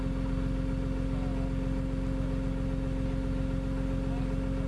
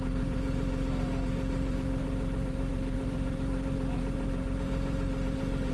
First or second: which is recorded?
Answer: first